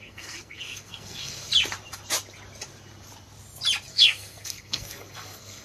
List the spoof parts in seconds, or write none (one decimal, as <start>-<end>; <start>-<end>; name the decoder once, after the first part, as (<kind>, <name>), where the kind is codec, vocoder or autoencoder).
0.0-1.5 (codec, SNAC); 3.9-5.6